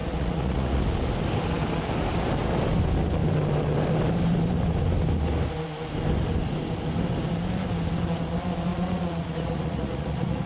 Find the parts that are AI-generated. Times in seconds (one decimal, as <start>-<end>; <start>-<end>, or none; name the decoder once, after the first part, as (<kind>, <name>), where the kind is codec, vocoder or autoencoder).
0.0-0.8 (vocoder, Vocos); 8.7-10.5